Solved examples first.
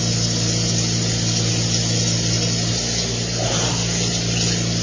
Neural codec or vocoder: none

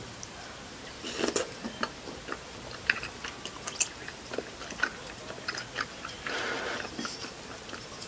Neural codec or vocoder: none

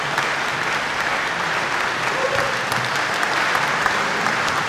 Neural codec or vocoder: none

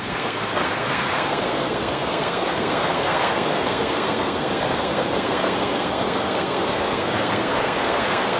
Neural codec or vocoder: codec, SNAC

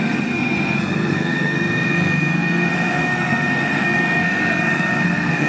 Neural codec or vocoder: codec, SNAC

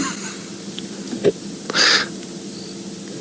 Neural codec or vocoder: none